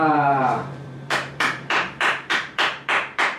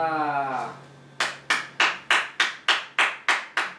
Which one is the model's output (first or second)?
first